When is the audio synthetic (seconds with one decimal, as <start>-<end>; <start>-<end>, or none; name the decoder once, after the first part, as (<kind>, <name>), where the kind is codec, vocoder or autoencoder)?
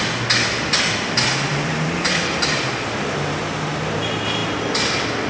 1.5-2.4 (vocoder, BigVGAN v2)